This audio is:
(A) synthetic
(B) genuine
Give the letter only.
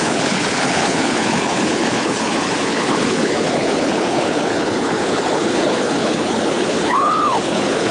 A